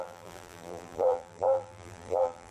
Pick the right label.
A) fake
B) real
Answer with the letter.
A